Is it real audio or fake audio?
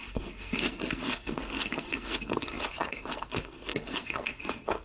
fake